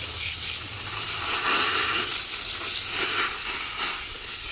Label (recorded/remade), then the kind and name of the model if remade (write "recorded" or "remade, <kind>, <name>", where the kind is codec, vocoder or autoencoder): recorded